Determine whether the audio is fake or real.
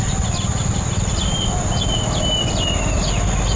real